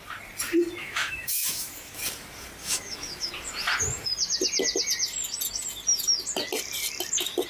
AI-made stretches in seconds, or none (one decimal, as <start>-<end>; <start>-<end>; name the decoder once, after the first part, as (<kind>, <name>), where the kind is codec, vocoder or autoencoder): 0.8-2.0 (autoencoder, DAC-VAE); 2.6-3.3